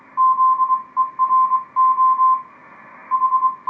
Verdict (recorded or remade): recorded